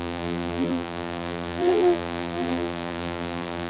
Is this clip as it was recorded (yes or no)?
no